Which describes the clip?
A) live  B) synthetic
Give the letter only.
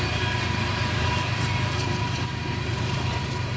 B